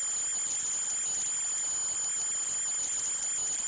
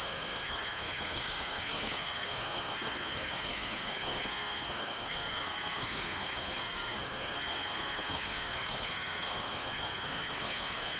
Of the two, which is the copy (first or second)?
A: second